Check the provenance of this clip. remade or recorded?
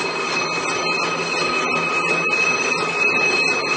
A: recorded